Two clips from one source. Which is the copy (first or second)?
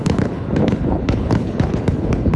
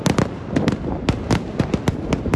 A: first